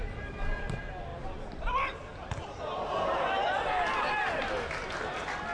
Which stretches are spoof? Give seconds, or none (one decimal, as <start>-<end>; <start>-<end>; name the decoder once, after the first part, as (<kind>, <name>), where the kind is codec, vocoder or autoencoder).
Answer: none